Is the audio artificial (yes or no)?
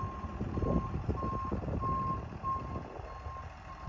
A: no